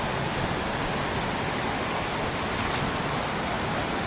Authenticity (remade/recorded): recorded